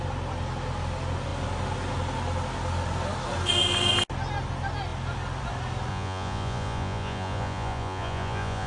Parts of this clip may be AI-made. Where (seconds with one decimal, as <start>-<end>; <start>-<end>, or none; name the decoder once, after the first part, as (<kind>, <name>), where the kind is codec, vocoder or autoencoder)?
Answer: 5.9-8.7 (vocoder, Vocos)